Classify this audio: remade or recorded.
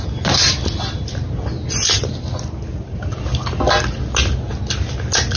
recorded